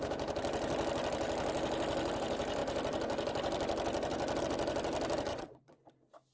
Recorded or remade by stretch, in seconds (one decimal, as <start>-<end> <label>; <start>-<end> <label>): 0.0-5.3 recorded; 5.3-5.8 remade; 5.8-6.3 recorded